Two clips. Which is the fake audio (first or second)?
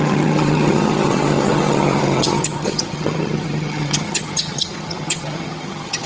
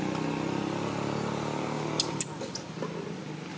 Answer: first